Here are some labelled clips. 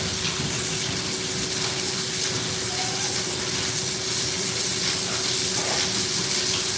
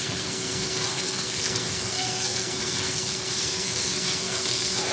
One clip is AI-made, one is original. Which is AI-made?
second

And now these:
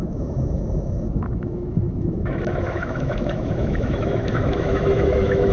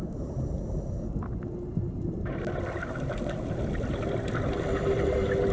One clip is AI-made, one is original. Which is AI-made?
first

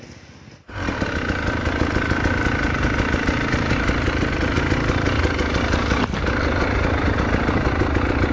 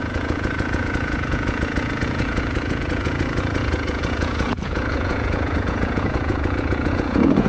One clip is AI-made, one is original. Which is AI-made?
second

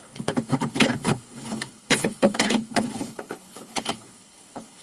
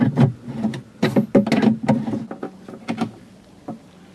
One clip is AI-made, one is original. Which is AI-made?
first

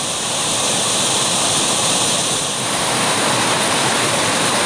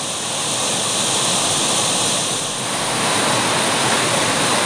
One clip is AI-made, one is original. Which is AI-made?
first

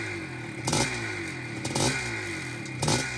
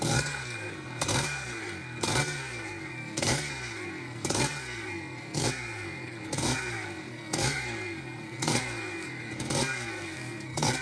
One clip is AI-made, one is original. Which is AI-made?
second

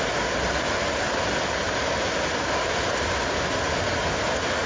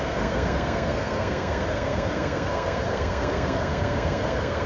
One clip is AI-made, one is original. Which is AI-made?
second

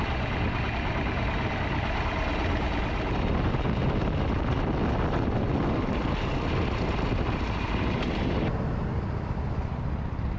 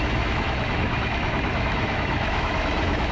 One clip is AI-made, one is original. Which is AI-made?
second